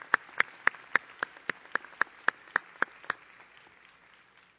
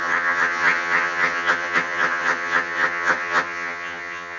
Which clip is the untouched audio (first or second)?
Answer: first